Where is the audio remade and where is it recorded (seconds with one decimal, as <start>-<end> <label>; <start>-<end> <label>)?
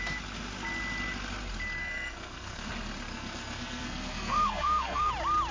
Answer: 0.0-1.8 recorded; 1.8-2.7 remade; 2.7-3.1 recorded; 3.1-5.1 remade; 5.1-5.5 recorded